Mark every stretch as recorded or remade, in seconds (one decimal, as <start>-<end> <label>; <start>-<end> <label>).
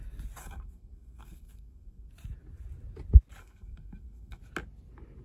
0.0-0.4 recorded; 0.4-2.1 remade; 2.1-3.4 recorded; 3.4-4.4 remade; 4.4-5.2 recorded